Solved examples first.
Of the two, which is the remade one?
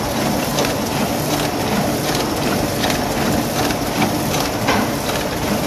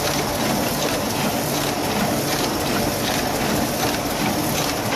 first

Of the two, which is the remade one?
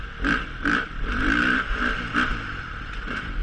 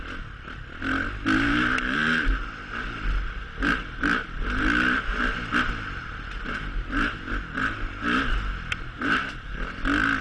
first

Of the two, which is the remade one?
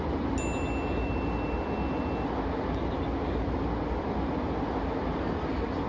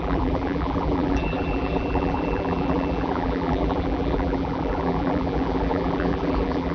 second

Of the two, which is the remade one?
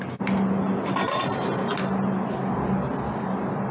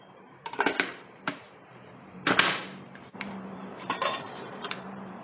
second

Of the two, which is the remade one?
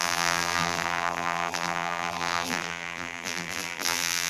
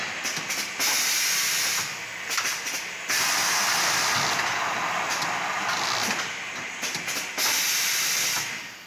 first